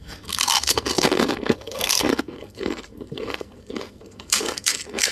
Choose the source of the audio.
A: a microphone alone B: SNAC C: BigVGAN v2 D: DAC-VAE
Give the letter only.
B